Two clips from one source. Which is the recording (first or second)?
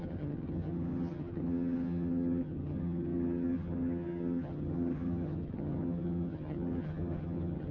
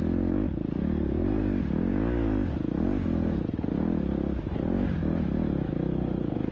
second